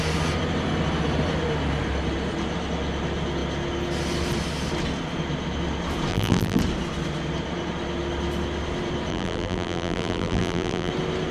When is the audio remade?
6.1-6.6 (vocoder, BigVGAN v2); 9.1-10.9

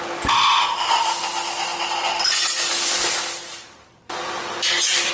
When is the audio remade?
none

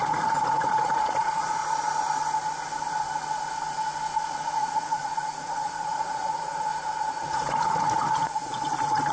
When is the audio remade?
0.0-1.6 (vocoder, Vocos); 4.4-6.7; 7.2-9.1

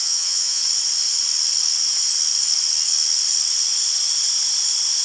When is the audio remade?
0.0-0.6 (vocoder, HiFi-GAN)

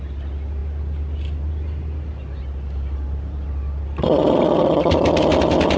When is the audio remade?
none